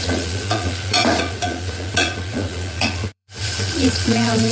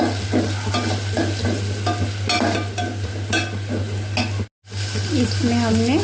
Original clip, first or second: second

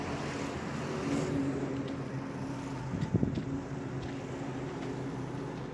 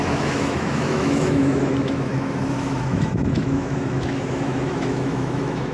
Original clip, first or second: first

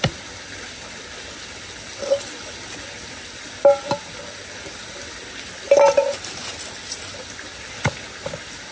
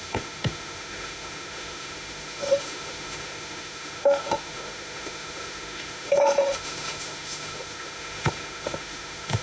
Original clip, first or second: first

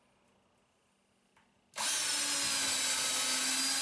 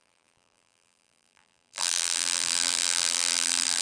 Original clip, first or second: first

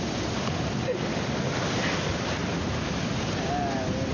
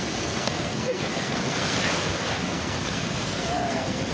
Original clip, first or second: first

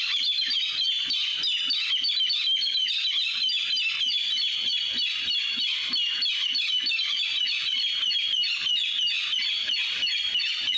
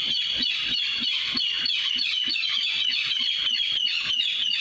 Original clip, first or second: first